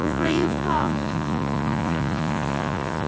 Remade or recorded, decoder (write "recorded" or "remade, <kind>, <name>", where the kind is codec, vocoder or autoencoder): remade, vocoder, Vocos